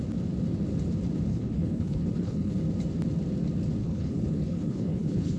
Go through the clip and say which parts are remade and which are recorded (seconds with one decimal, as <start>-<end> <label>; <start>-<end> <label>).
0.0-1.3 recorded; 1.3-2.5 remade; 2.5-3.8 recorded; 3.8-5.4 remade